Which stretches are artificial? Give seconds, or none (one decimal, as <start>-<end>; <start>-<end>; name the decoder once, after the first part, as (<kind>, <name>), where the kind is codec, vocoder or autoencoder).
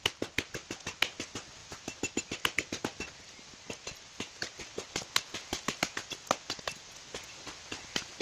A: none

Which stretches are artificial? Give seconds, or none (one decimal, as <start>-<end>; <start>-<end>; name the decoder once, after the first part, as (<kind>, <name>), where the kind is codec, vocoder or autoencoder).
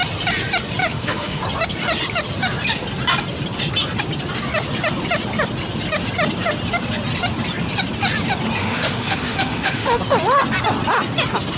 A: 0.8-1.4 (autoencoder, DAC-VAE); 8.6-10.0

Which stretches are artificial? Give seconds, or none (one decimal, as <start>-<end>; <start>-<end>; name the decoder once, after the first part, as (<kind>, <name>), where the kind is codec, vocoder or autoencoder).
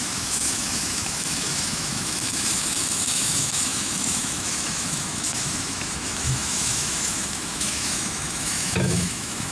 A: 0.0-9.5 (autoencoder, DAC-VAE)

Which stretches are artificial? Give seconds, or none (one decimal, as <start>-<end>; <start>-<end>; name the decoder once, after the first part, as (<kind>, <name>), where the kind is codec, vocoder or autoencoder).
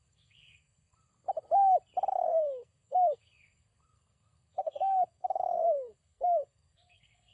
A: 0.0-1.1 (codec, SNAC); 2.1-7.3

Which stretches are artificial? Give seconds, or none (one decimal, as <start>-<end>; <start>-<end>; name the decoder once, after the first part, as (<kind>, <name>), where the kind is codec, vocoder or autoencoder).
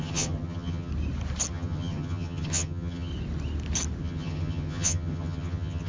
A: 0.0-0.9 (vocoder, HiFi-GAN); 1.5-3.1; 4.0-5.9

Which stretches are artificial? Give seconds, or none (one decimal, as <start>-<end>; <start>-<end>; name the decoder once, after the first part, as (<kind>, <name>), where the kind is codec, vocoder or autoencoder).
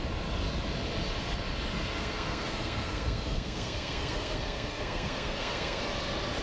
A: 2.0-5.8 (codec, SNAC)